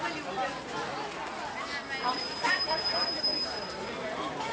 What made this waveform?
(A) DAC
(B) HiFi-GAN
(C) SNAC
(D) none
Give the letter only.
D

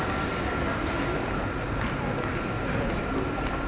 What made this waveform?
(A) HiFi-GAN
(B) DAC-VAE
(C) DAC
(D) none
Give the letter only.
D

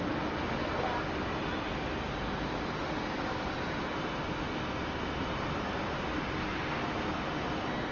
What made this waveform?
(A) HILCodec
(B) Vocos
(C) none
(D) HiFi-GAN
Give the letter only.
C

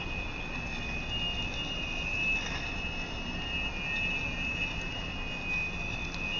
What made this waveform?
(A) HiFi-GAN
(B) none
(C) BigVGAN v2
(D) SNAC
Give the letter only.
B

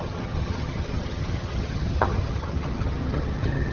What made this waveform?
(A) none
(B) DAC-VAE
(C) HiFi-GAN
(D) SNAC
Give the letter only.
C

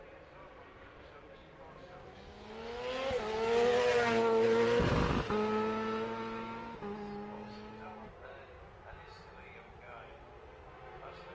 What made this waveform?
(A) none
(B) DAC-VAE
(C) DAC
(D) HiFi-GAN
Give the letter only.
A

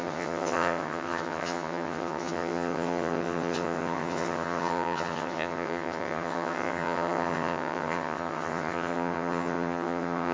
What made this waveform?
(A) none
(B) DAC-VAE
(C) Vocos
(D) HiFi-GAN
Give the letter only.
D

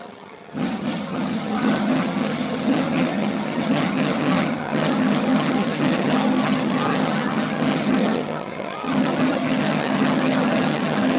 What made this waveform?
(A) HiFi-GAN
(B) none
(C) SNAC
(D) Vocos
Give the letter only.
A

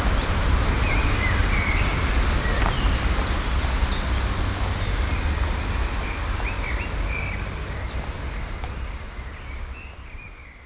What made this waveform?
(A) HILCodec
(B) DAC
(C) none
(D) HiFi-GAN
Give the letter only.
C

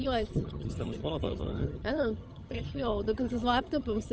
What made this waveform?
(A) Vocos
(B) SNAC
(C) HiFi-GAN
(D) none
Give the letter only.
C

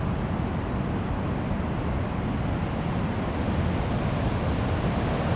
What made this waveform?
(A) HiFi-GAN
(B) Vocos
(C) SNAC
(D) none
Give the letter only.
D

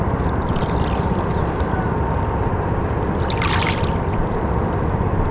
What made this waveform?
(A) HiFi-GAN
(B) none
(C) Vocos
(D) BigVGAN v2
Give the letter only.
B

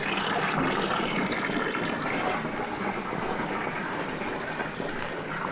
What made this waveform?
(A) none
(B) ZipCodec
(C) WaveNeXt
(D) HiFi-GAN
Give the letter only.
A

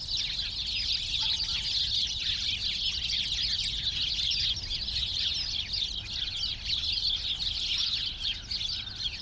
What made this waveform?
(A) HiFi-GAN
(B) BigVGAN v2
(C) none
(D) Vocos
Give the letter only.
C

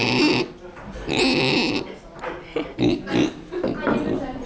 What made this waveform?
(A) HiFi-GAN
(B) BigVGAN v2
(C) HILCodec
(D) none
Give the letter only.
D